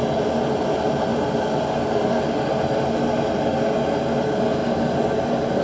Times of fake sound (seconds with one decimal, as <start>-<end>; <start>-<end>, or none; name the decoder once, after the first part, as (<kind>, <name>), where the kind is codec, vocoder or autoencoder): none